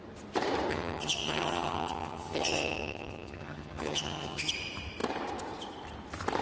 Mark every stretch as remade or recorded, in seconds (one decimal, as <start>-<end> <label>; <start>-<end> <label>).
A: 0.0-0.7 recorded; 0.7-4.5 remade; 4.5-6.4 recorded